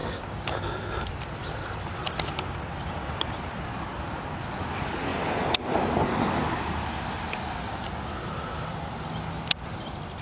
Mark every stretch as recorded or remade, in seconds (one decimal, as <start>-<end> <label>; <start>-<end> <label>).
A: 0.0-0.5 remade; 0.5-10.2 recorded